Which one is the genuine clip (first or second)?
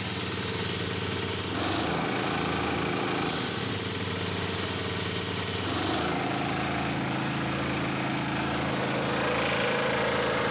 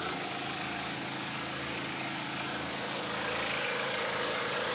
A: first